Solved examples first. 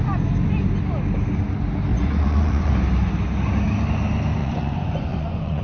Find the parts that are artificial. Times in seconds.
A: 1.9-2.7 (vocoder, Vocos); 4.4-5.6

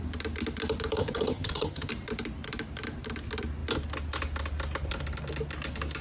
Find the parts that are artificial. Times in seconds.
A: 1.0-1.9 (vocoder, HiFi-GAN)

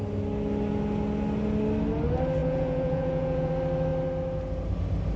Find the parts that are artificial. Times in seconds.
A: 2.4-3.5 (vocoder, Vocos)

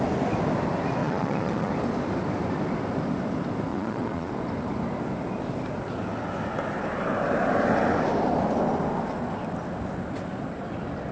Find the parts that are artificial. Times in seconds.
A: 1.0-1.7 (vocoder, Vocos); 3.7-4.3

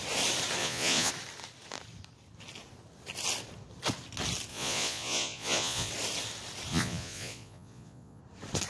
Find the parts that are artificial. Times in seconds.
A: 0.6-1.1 (vocoder, Vocos); 4.5-5.9; 6.7-8.2

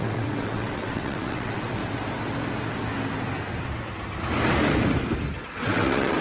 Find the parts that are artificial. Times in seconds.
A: 0.0-1.8 (vocoder, WaveNeXt); 5.4-6.2

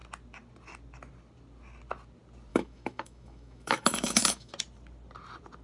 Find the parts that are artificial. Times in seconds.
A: 2.5-4.5 (autoencoder, DAC-VAE)